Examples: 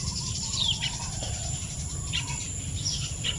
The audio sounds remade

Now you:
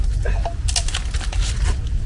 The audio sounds recorded